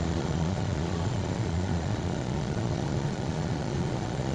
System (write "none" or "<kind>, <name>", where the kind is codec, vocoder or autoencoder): vocoder, Vocos